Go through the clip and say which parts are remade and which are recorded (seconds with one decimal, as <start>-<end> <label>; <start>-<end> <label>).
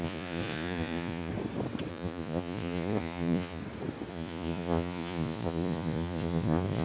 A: 0.0-1.3 remade; 1.3-1.9 recorded; 1.9-3.6 remade; 3.6-4.1 recorded; 4.1-6.8 remade